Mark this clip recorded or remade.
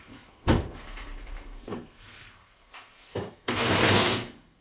remade